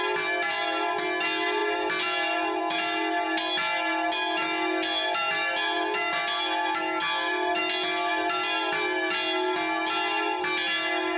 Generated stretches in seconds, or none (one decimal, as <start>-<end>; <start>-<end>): none